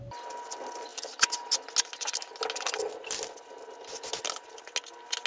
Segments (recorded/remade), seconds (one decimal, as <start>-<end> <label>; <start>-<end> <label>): 0.0-5.3 recorded